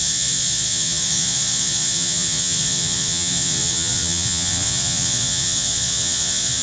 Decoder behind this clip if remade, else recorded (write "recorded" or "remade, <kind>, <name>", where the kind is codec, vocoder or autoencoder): remade, vocoder, Vocos